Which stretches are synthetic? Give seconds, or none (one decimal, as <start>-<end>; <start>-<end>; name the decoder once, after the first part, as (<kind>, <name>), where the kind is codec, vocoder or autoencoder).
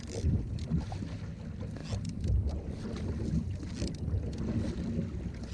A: none